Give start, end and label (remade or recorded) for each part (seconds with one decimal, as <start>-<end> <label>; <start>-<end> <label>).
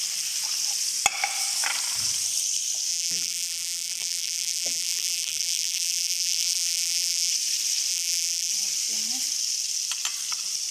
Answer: 0.0-2.9 recorded; 2.9-7.3 remade; 7.3-7.9 recorded; 7.9-8.5 remade; 8.5-10.7 recorded